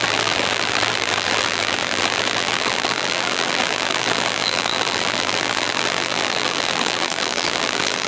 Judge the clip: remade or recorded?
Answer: remade